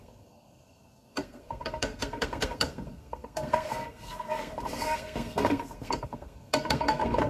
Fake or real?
fake